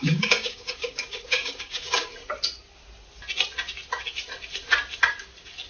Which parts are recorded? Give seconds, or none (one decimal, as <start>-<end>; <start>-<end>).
2.1-5.7